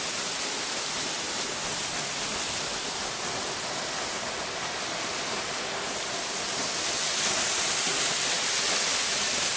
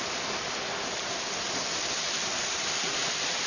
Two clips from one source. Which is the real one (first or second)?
first